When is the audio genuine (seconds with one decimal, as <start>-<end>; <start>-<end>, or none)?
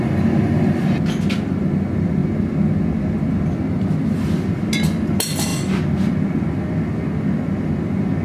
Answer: 0.0-8.2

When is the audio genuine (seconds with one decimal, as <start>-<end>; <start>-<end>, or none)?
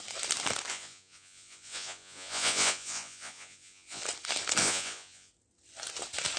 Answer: 0.0-0.7; 4.0-4.6; 5.3-6.4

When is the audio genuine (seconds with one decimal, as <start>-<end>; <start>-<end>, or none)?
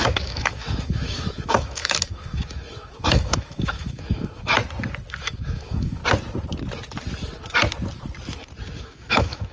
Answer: 4.5-5.2; 6.0-8.8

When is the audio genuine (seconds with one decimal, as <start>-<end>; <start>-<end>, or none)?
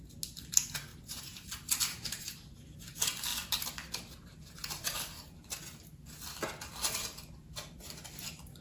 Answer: 0.0-0.9; 2.6-8.6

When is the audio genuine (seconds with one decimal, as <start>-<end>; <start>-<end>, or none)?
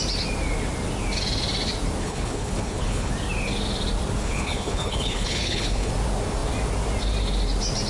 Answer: 0.0-2.0; 3.1-4.2; 5.9-7.9